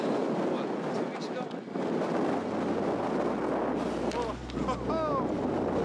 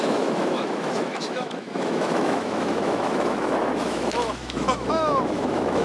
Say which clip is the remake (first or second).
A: second